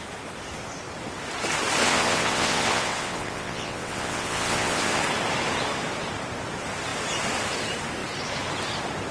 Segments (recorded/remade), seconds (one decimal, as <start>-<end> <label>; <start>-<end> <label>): 0.0-1.8 recorded; 1.8-5.0 remade; 5.0-9.1 recorded